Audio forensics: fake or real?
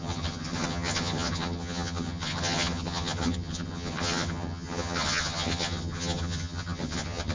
fake